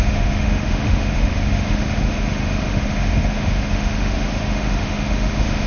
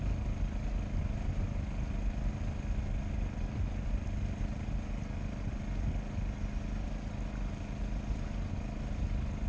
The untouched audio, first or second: second